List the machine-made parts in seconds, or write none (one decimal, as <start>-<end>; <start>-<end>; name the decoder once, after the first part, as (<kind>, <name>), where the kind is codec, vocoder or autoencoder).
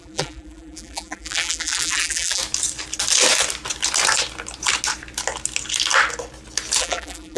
0.0-2.4 (vocoder, BigVGAN v2); 6.8-7.4